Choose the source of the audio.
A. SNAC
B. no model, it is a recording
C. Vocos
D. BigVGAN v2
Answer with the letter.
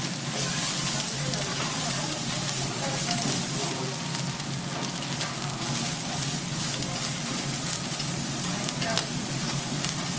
B